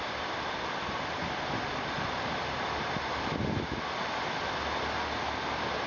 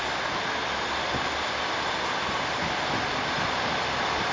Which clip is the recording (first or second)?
second